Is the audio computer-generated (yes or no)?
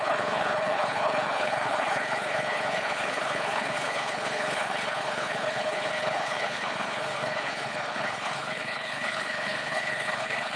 yes